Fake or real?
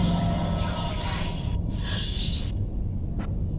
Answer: real